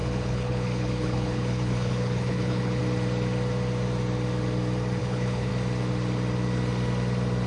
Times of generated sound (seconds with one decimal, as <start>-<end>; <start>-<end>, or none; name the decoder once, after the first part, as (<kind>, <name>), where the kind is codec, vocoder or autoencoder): 0.0-2.8 (codec, HILCodec); 5.0-5.5